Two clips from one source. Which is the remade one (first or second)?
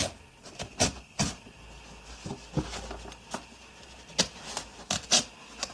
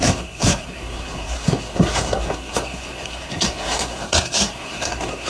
second